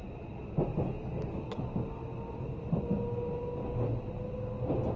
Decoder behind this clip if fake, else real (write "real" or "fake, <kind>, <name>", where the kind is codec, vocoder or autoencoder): real